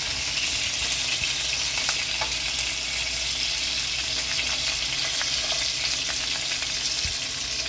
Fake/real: real